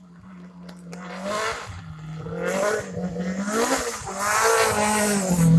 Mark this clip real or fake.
real